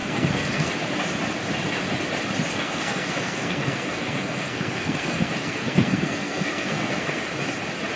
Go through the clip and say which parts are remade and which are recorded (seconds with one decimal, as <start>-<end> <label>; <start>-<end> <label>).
0.0-0.7 remade; 0.7-2.5 recorded; 2.5-7.3 remade; 7.3-8.0 recorded